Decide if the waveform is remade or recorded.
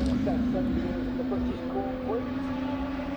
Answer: remade